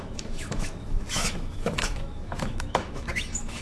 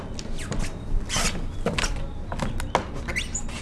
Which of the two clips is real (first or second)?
second